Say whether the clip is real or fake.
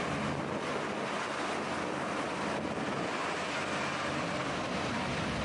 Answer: real